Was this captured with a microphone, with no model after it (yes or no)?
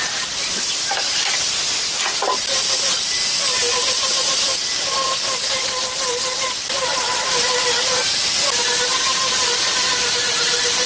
no